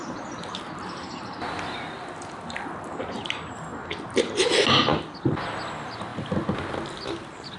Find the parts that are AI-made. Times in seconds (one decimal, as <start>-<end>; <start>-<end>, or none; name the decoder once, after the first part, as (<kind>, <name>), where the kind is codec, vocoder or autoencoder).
none